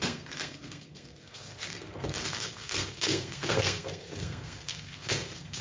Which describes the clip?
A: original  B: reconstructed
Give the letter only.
B